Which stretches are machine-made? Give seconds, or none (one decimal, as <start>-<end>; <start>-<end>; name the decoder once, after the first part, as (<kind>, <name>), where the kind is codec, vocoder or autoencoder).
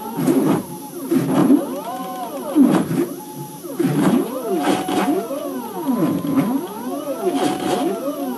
0.0-8.4 (vocoder, BigVGAN v2)